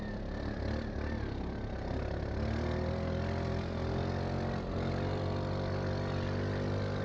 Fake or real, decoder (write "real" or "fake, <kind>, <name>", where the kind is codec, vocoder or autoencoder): real